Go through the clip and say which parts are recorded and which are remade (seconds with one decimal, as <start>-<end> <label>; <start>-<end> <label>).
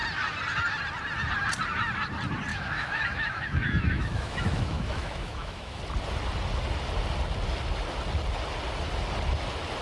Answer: 0.0-2.5 recorded; 2.5-5.8 remade; 5.8-9.8 recorded